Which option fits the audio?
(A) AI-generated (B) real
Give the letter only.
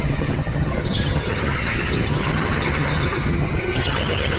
A